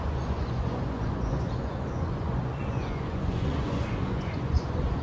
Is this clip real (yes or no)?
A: no